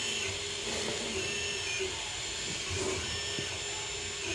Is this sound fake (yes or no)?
no